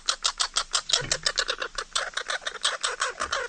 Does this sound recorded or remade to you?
recorded